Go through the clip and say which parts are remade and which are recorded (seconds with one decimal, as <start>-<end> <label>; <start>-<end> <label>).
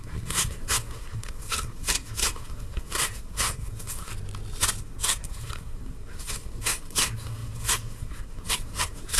0.0-4.1 remade; 4.1-4.8 recorded; 4.8-9.2 remade